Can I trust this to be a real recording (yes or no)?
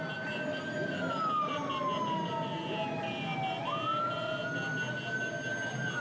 yes